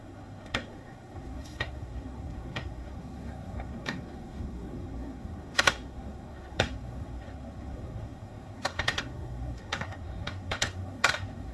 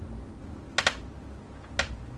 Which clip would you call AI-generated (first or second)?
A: first